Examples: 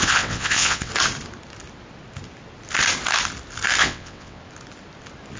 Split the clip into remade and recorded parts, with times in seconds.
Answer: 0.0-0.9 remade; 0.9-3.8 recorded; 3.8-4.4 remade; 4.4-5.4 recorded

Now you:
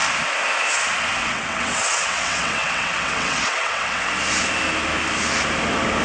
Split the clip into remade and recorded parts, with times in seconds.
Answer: 0.0-1.2 recorded; 1.2-4.1 remade; 4.1-6.0 recorded

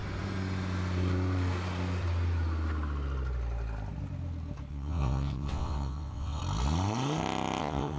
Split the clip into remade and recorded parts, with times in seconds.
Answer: 0.0-4.7 recorded; 4.7-6.4 remade; 6.4-7.6 recorded; 7.6-8.0 remade

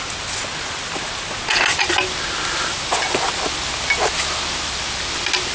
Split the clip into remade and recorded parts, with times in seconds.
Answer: 0.0-5.5 recorded

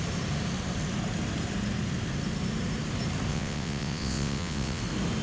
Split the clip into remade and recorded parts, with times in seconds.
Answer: 0.0-3.3 recorded; 3.3-4.8 remade; 4.8-5.2 recorded

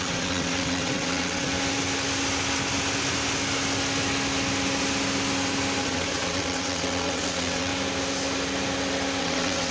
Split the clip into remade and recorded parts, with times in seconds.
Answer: 0.0-1.5 remade; 1.5-5.8 recorded; 5.8-7.7 remade; 7.7-9.2 recorded; 9.2-9.7 remade

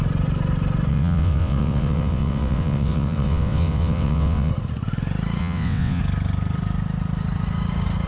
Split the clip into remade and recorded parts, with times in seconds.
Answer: 0.0-0.9 recorded; 0.9-4.5 remade; 4.5-5.4 recorded; 5.4-6.0 remade; 6.0-8.1 recorded